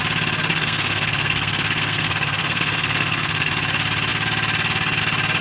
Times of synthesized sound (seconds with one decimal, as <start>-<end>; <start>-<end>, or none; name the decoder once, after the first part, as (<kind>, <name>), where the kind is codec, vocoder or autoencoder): 0.5-3.5 (codec, SNAC)